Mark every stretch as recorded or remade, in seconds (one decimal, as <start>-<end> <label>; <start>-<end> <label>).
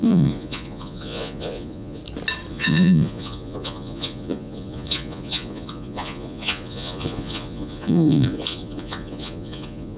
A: 0.0-2.0 remade; 2.0-2.5 recorded; 2.5-10.0 remade